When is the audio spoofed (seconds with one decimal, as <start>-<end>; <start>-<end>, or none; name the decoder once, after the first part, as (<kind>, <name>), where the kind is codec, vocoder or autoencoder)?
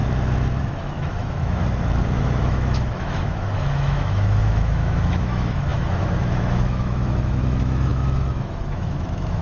0.6-1.6 (autoencoder, DAC-VAE); 2.2-9.4